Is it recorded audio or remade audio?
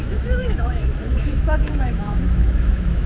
remade